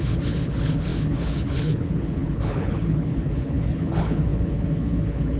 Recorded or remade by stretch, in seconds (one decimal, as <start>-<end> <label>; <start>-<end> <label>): 0.0-5.4 remade